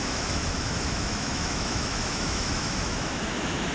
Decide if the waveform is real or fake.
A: fake